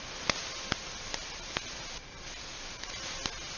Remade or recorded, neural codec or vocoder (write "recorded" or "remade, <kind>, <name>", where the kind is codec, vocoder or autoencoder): recorded